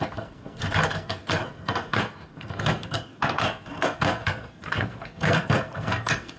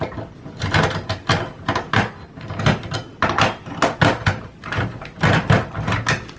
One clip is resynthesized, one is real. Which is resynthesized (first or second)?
first